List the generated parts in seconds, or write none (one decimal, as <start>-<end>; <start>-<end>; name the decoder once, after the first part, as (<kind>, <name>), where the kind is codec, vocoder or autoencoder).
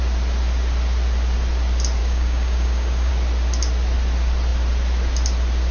2.0-3.1 (codec, DAC)